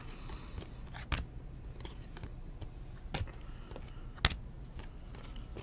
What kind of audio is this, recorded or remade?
recorded